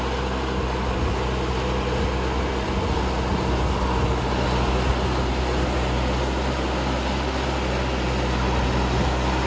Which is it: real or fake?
real